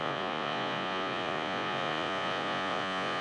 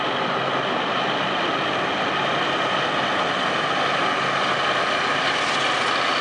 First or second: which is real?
second